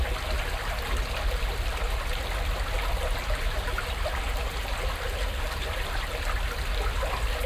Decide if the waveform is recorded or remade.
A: recorded